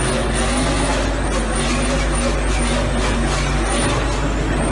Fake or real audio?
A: real